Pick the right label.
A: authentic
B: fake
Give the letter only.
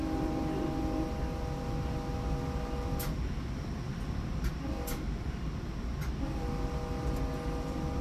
A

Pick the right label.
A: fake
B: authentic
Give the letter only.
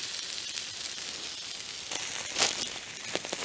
B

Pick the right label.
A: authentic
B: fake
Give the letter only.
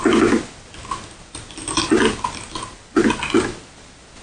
A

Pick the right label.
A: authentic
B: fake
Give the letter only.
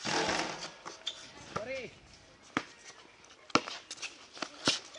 A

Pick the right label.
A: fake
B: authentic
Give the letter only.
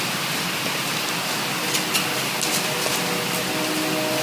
B